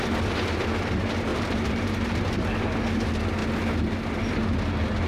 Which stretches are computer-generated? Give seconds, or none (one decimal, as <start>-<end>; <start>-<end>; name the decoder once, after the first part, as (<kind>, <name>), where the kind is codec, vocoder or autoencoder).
1.3-2.3 (vocoder, BigVGAN v2)